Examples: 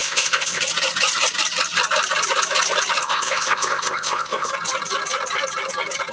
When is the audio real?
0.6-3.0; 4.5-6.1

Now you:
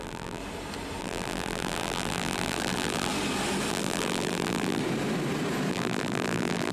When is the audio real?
0.4-1.0; 3.1-3.7; 4.8-5.7

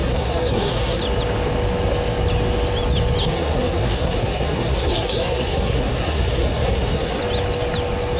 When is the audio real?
1.0-3.2; 7.2-8.2

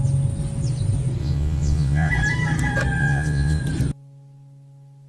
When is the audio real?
0.0-1.2; 2.1-3.0; 3.6-5.1

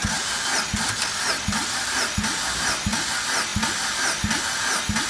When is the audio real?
3.1-3.5; 4.4-5.1